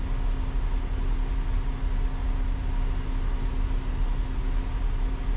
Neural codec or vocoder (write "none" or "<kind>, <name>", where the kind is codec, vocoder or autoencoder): none